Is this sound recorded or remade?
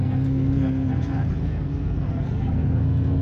remade